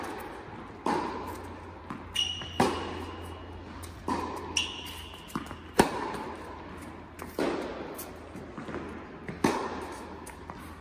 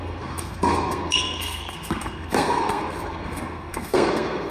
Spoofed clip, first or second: second